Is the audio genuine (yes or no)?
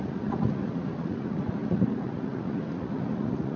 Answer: no